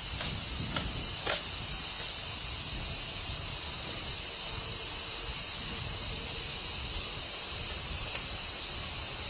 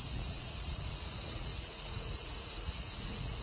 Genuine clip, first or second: first